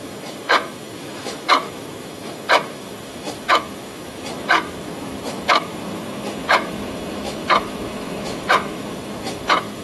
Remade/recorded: remade